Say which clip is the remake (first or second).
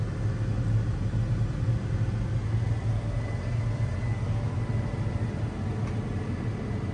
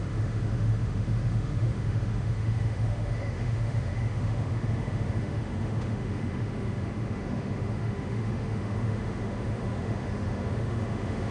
second